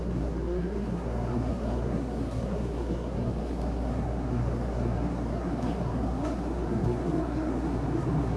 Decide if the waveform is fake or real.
fake